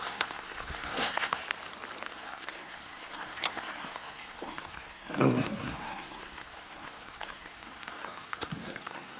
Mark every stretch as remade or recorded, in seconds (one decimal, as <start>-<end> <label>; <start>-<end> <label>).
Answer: 0.0-1.4 remade; 1.4-2.1 recorded; 2.1-9.2 remade